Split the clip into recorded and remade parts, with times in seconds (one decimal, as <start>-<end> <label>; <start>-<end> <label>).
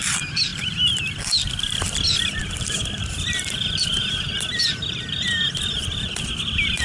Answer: 0.0-6.8 recorded